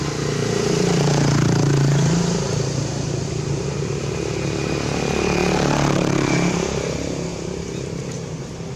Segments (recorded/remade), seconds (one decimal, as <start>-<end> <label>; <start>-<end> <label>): 0.0-0.4 recorded; 0.4-3.9 remade; 3.9-5.4 recorded; 5.4-6.8 remade; 6.8-7.3 recorded; 7.3-8.4 remade; 8.4-8.8 recorded